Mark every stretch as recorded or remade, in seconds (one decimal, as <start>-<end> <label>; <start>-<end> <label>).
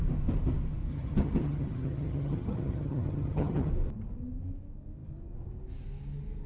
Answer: 0.0-0.9 recorded; 0.9-3.7 remade; 3.7-6.5 recorded